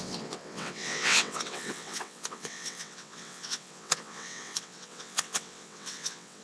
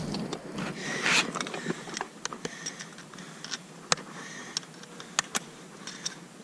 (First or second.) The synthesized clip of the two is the first